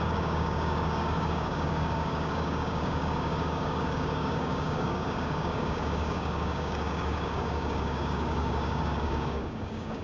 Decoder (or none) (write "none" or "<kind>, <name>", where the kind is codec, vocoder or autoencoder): codec, DAC